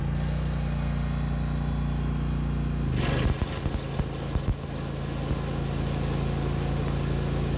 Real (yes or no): yes